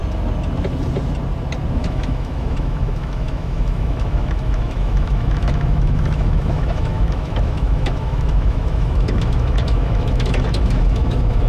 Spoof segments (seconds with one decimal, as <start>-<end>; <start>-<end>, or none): 1.8-11.5